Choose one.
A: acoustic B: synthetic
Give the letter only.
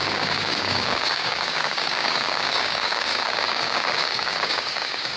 B